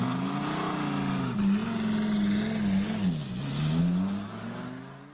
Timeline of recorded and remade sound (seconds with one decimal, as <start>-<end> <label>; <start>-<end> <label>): 0.0-5.1 recorded